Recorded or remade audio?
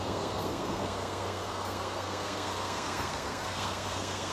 remade